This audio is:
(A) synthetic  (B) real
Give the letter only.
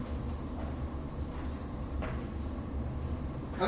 B